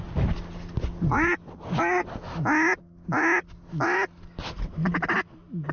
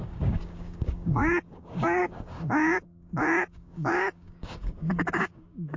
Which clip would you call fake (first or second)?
second